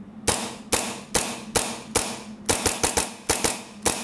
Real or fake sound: real